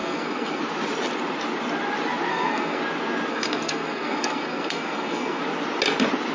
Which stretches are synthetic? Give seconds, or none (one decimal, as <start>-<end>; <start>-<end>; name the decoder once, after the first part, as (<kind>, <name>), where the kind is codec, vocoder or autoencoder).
0.0-0.6 (codec, SNAC); 2.3-2.8; 3.3-5.4